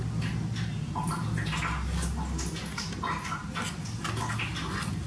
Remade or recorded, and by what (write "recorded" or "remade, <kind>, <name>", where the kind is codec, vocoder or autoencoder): recorded